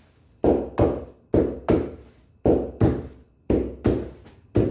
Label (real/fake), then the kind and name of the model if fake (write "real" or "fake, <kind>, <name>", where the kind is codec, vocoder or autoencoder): real